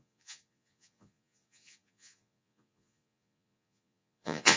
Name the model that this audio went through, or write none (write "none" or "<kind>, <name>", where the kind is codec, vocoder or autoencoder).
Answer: vocoder, Vocos